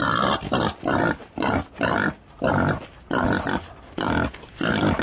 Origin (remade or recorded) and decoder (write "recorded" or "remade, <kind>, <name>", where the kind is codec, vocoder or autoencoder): remade, vocoder, BigVGAN v2